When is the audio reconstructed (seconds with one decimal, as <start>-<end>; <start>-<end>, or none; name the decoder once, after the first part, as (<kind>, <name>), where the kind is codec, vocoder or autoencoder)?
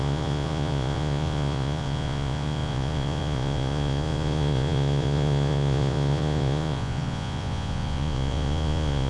0.0-9.1 (vocoder, Vocos)